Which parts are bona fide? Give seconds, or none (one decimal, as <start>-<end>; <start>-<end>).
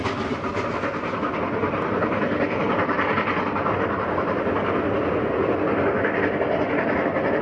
0.0-1.6; 2.7-7.4